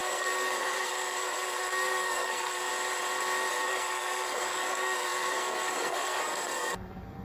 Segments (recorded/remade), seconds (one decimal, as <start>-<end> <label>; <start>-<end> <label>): 0.0-2.7 remade; 2.7-3.5 recorded; 3.5-7.2 remade